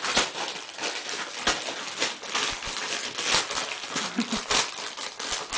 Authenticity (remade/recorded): recorded